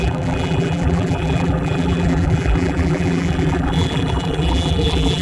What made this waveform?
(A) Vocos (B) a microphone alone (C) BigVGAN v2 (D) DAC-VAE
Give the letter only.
C